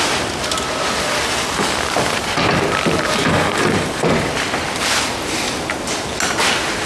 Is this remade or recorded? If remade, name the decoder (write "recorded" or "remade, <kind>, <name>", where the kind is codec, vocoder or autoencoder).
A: recorded